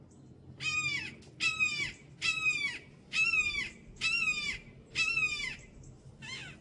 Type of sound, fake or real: real